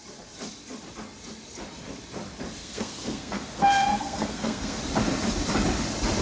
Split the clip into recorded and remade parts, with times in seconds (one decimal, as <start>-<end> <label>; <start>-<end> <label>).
0.0-2.6 recorded; 2.6-4.8 remade; 4.8-6.2 recorded